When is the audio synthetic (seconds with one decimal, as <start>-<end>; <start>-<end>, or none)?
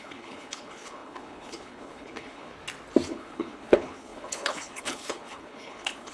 0.0-2.5; 3.1-6.1